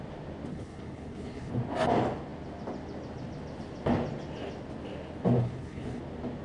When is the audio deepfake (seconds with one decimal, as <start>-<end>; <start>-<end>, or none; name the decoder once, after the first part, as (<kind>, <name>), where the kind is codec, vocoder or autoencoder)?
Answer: 0.5-1.5 (codec, HILCodec); 5.4-6.0